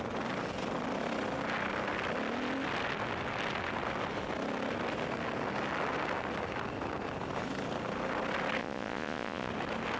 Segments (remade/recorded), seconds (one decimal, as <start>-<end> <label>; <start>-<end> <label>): 0.0-8.6 recorded; 8.6-9.5 remade; 9.5-10.0 recorded